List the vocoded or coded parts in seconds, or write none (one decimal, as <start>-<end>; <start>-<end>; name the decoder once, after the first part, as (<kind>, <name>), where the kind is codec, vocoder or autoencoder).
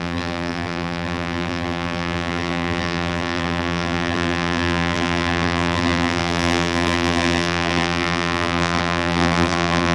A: 0.0-9.9 (vocoder, BigVGAN v2)